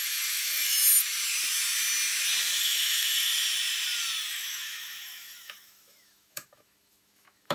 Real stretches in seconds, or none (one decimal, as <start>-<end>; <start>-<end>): 0.8-2.6; 3.3-4.3